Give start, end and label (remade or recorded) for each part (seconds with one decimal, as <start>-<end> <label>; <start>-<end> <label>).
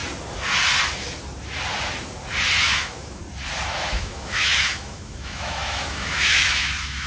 0.0-2.6 recorded; 2.6-3.2 remade; 3.2-3.8 recorded; 3.8-7.1 remade